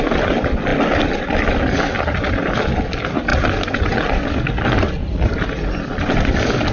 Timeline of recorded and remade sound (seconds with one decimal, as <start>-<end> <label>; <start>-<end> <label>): 0.0-6.7 recorded